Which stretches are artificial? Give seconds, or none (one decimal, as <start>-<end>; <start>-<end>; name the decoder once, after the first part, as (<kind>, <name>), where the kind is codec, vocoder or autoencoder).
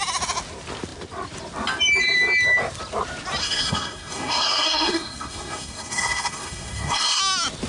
3.4-7.2 (codec, SNAC)